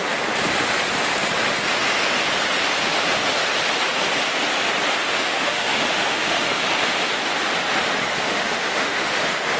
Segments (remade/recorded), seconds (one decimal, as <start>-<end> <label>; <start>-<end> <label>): 0.0-5.0 recorded; 5.0-6.6 remade; 6.6-8.1 recorded; 8.1-9.2 remade; 9.2-9.6 recorded